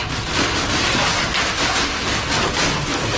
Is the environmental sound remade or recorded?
recorded